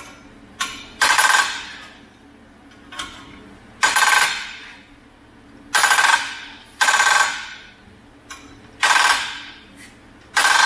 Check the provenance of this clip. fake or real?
real